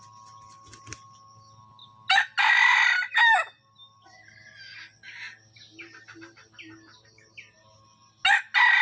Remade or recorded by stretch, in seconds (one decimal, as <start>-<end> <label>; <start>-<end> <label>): 0.0-8.8 recorded